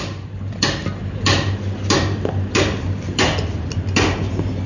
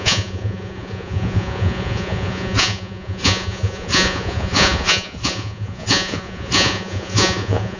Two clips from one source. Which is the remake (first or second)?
second